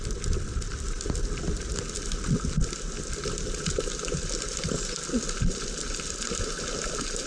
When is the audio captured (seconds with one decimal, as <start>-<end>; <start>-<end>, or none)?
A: 0.0-7.3